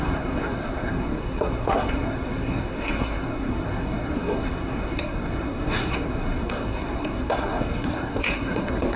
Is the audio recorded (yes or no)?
no